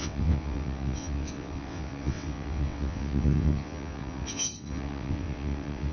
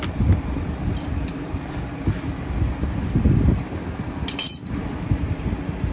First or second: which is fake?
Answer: first